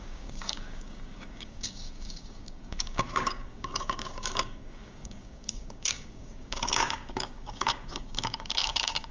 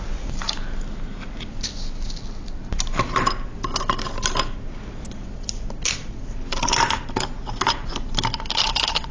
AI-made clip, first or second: first